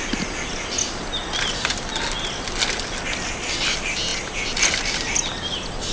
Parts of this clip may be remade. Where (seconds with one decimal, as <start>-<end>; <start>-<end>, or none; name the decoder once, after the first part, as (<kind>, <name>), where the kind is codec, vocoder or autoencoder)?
0.0-0.5 (vocoder, BigVGAN v2); 1.5-1.9; 3.6-4.1; 5.5-5.9